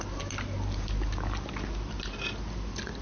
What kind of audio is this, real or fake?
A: real